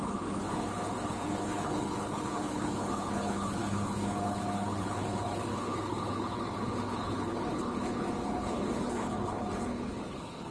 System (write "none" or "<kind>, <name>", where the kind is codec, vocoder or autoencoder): codec, HILCodec